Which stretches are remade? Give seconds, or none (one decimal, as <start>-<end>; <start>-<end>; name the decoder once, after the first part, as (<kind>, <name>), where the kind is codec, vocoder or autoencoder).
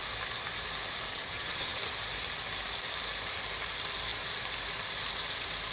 1.1-1.8 (vocoder, HiFi-GAN)